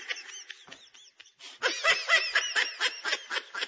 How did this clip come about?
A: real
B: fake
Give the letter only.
A